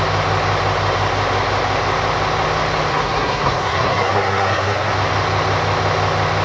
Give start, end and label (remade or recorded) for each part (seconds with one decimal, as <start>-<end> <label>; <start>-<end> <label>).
0.0-2.9 recorded; 2.9-4.9 remade; 4.9-6.4 recorded